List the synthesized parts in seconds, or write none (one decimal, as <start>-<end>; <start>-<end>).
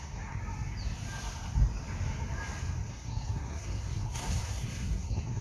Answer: 0.0-0.4; 2.9-5.4